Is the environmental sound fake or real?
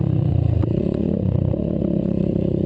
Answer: fake